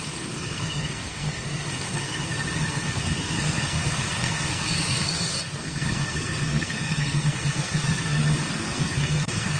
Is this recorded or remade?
remade